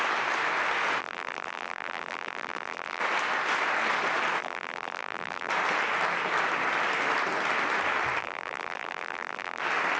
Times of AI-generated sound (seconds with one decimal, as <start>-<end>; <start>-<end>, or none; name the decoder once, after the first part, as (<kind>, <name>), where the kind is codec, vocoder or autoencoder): 1.0-3.0 (vocoder, BigVGAN v2); 4.4-5.5; 8.2-9.6